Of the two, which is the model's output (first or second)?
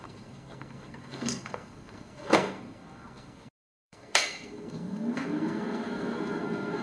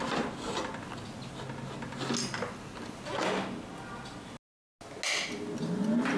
first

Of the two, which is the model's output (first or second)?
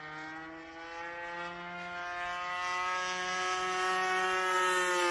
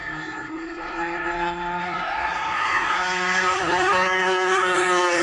second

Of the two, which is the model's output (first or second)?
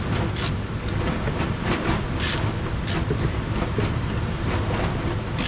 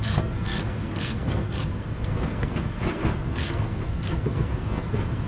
second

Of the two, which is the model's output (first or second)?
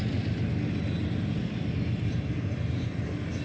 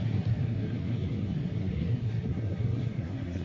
second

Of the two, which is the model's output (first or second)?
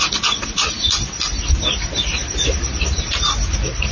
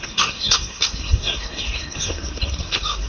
second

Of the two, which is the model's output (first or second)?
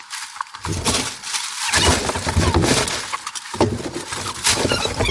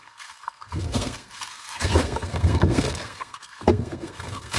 second